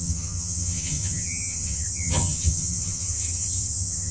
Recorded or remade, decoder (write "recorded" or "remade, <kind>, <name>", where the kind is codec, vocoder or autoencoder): remade, vocoder, HiFi-GAN